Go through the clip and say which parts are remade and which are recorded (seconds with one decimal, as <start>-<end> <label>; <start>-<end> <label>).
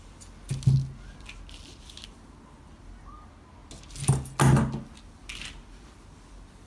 0.0-6.7 recorded